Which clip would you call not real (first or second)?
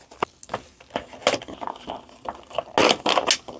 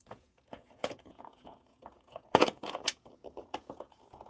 second